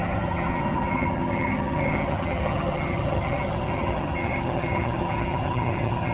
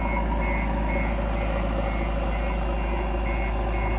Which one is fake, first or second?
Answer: first